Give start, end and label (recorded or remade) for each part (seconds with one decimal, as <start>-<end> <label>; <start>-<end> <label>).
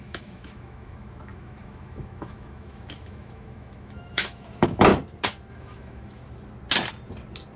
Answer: 0.0-4.9 remade; 4.9-5.5 recorded; 5.5-6.2 remade; 6.2-7.6 recorded